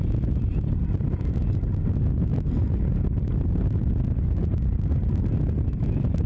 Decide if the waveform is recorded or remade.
recorded